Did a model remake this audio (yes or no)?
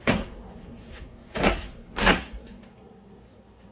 yes